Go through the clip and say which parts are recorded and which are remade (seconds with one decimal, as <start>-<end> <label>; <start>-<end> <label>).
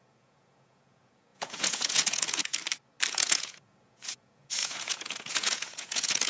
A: 0.0-2.6 remade; 2.6-3.1 recorded; 3.1-6.3 remade